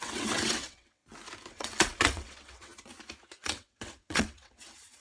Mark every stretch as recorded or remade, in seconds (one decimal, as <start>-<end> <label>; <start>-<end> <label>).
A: 0.0-1.0 remade; 1.0-1.5 recorded; 1.5-2.7 remade; 2.7-3.4 recorded; 3.4-5.0 remade